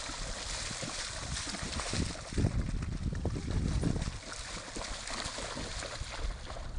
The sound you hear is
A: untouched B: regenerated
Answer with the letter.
A